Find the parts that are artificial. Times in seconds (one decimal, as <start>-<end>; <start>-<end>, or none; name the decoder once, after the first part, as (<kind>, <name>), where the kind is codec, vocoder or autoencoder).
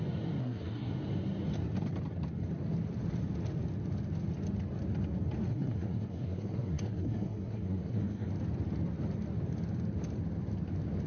0.4-0.9 (codec, SNAC); 5.5-8.3